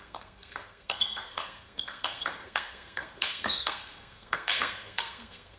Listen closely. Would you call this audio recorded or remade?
remade